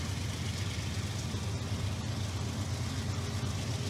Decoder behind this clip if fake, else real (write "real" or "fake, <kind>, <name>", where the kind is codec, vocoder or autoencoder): real